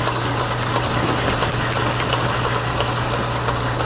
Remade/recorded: recorded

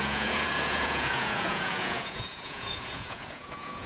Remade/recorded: remade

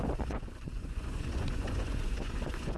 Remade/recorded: remade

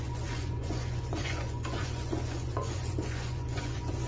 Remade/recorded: remade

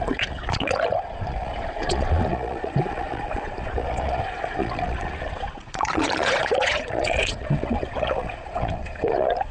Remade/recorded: remade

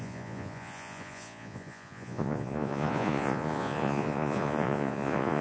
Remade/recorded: remade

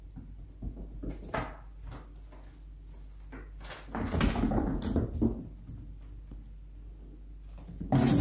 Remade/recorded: recorded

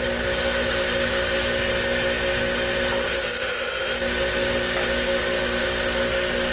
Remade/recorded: recorded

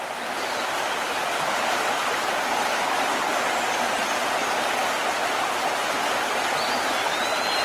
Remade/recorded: recorded